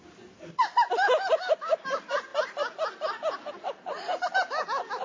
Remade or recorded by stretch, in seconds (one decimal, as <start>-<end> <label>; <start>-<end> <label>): 0.0-5.0 recorded